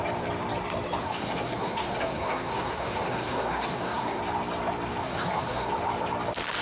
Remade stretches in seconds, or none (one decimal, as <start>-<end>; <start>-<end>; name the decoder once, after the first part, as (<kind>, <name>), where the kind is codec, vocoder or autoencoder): 1.0-4.2 (codec, SNAC); 5.0-5.7